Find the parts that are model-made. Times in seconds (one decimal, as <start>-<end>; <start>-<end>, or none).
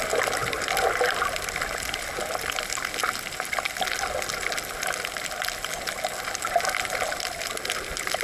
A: 0.4-1.2